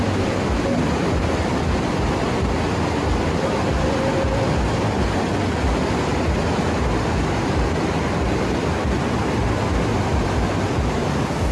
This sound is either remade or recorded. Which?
recorded